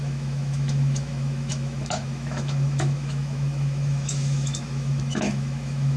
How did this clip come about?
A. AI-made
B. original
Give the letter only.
A